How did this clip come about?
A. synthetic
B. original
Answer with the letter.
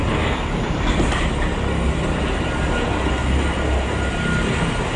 B